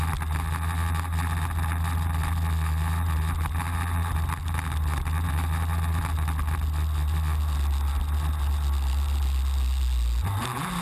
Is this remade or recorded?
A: recorded